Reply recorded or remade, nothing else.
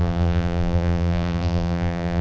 remade